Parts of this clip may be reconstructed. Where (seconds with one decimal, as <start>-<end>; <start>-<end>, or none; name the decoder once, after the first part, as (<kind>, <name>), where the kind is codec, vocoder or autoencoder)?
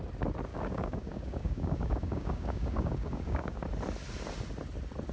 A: 0.5-3.6 (codec, DAC)